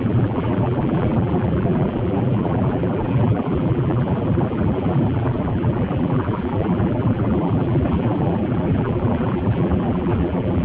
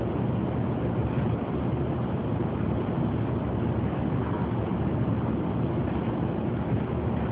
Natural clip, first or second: second